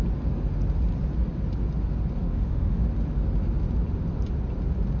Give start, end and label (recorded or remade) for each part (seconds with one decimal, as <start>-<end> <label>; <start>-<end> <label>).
0.0-2.2 recorded; 2.2-2.8 remade; 2.8-5.0 recorded